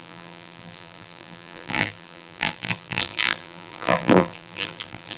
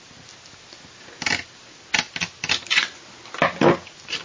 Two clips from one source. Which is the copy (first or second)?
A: first